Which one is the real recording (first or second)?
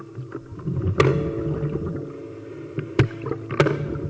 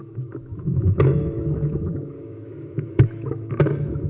first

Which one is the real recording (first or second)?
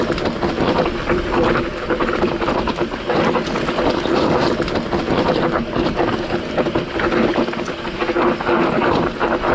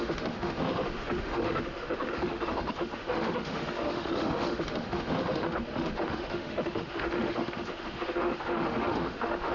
first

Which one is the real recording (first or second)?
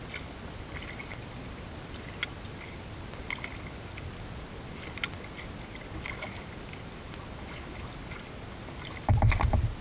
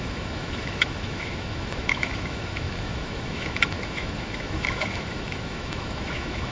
first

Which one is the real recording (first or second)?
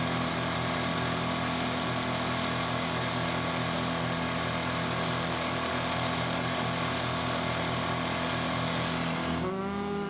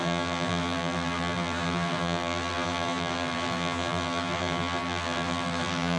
first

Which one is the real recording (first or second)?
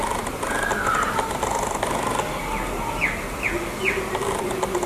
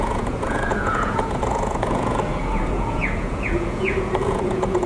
first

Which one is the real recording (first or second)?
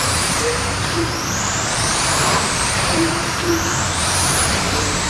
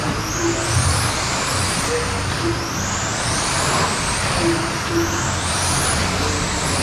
second